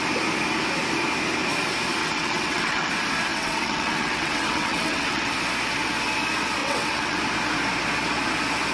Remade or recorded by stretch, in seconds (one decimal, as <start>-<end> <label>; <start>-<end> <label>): 0.0-2.0 recorded; 2.0-2.9 remade; 2.9-3.3 recorded; 3.3-5.3 remade; 5.3-6.6 recorded; 6.6-7.2 remade; 7.2-8.7 recorded